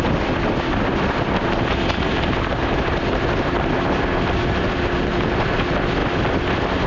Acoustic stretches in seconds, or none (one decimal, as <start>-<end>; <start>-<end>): 0.0-6.9